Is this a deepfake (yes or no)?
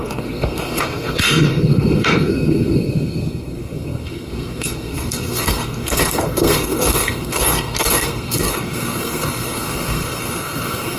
yes